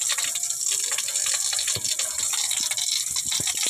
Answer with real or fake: real